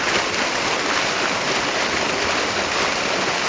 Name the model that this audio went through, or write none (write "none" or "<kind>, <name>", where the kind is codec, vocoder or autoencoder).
none